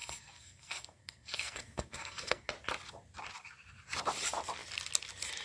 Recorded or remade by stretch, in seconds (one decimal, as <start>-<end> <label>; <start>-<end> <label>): 0.0-2.5 remade; 2.5-5.4 recorded